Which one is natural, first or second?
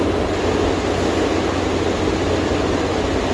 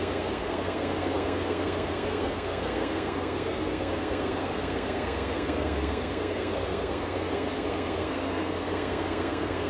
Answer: first